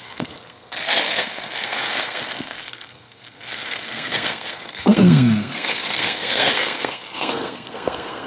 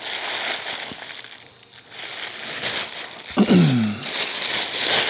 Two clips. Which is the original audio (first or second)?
second